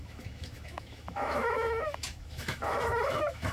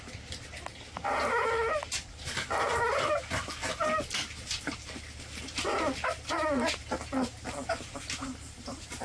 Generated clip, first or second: first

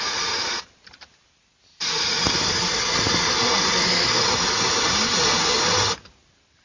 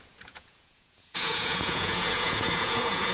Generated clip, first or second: second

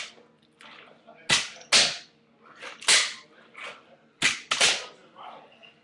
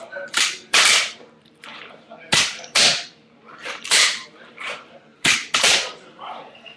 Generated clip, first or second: second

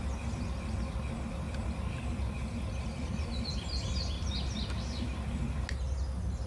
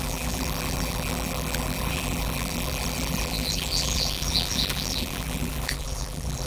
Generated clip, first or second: second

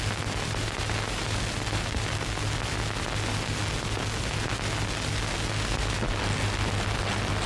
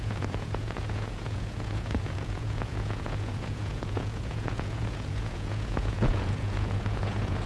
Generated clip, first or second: second